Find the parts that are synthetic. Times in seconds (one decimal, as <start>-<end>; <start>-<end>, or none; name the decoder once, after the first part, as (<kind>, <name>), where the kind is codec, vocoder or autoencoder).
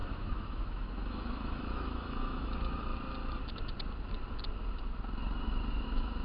0.0-2.9 (autoencoder, DAC-VAE); 5.7-6.2